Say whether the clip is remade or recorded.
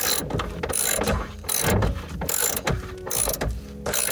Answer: recorded